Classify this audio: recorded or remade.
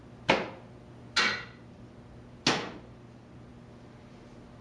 recorded